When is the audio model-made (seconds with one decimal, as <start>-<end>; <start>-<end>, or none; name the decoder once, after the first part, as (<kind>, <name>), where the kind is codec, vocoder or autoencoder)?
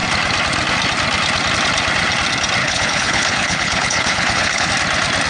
2.6-4.7 (codec, HILCodec)